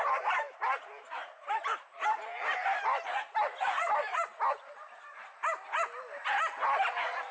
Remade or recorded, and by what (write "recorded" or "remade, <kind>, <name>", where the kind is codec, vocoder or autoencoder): recorded